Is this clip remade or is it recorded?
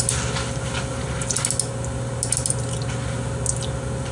recorded